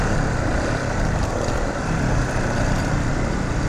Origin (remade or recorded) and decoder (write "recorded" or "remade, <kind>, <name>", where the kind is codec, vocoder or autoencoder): recorded